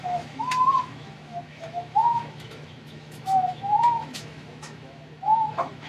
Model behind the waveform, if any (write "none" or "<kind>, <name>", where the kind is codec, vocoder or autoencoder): autoencoder, DAC-VAE